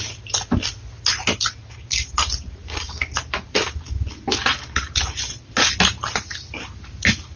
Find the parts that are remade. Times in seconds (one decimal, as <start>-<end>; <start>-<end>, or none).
none